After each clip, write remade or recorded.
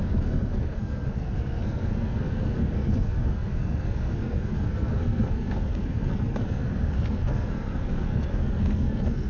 remade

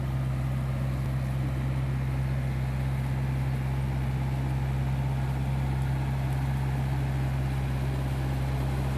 recorded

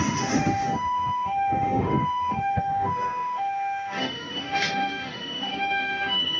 remade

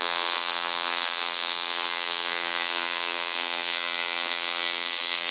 remade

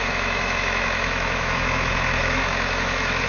remade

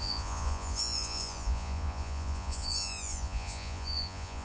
remade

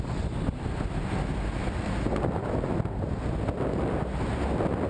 recorded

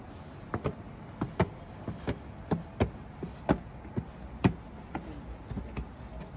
recorded